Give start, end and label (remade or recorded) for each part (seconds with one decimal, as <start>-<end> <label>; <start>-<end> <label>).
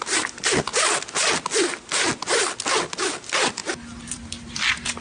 0.0-0.7 remade; 0.7-3.1 recorded; 3.1-5.0 remade